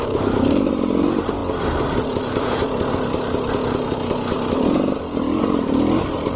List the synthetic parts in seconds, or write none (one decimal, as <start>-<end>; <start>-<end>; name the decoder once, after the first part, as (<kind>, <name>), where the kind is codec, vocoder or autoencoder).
none